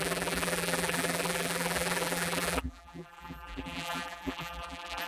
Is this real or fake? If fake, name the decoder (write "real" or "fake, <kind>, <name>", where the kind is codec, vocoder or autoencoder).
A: fake, vocoder, BigVGAN v2